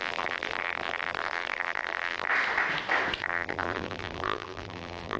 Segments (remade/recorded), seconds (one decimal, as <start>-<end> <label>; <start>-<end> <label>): 0.0-2.3 remade; 2.3-3.2 recorded; 3.2-5.2 remade